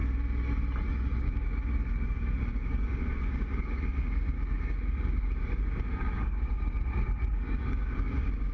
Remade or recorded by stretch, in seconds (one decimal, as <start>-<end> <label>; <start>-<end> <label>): 0.0-0.9 recorded; 0.9-8.5 remade